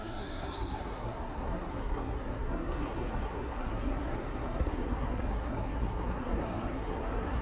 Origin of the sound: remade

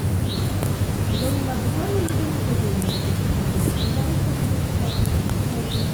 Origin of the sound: remade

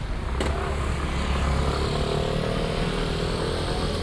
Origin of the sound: recorded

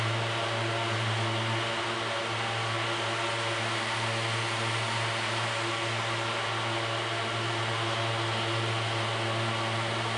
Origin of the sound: recorded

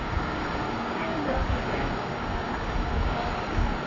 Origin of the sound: remade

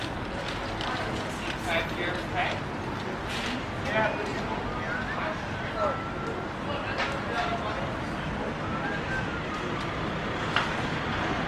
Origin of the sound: recorded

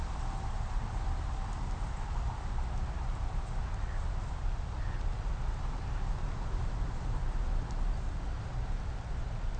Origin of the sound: recorded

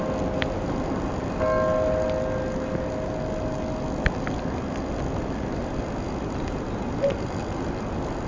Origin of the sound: recorded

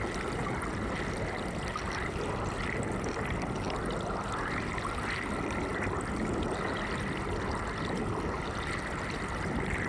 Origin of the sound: recorded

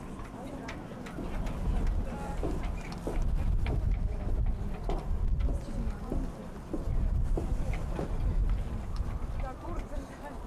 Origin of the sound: recorded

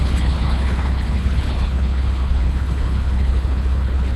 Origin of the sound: remade